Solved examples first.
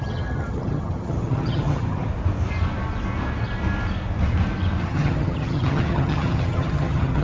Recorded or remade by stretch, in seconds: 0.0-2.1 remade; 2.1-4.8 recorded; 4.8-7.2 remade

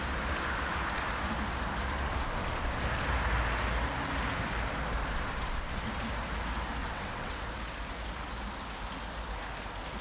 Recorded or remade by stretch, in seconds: 0.0-6.8 recorded; 6.8-7.4 remade; 7.4-10.0 recorded